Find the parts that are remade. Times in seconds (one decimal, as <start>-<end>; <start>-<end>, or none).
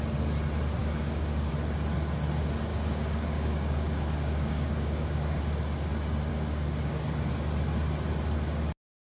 0.8-1.5; 2.7-5.4; 6.3-7.0